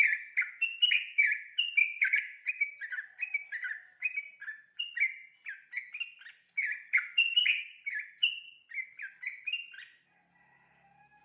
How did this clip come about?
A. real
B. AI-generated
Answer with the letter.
A